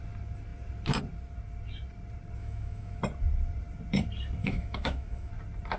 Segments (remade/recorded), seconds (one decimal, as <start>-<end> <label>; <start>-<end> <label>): 0.0-2.4 recorded; 2.4-3.0 remade; 3.0-4.4 recorded; 4.4-5.3 remade; 5.3-5.8 recorded